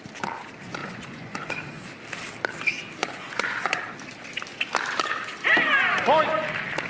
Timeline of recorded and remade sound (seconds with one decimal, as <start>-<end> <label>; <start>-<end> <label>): 0.0-0.8 recorded; 0.8-1.5 remade; 1.5-3.0 recorded; 3.0-3.8 remade; 3.8-6.9 recorded